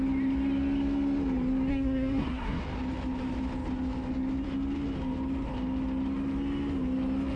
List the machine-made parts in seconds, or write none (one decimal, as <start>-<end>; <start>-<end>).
1.7-2.6

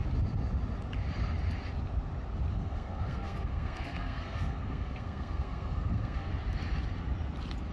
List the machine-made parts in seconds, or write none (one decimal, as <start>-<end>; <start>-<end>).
2.5-6.3

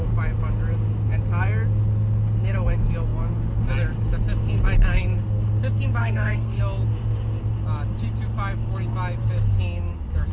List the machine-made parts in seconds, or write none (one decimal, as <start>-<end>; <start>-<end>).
6.0-6.6

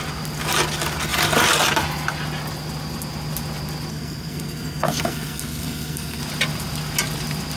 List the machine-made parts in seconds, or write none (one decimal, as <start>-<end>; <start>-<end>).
3.9-6.2

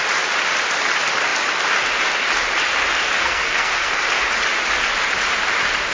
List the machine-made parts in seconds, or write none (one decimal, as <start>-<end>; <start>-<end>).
3.2-4.0

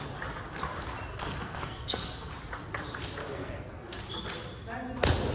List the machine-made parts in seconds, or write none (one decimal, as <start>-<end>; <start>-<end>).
1.1-2.3; 3.2-4.0

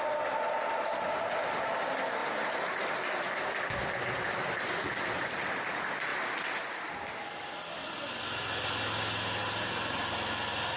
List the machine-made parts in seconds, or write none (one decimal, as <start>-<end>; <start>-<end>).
none

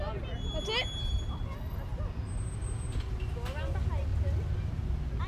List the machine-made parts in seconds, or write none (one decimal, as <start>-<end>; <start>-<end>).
none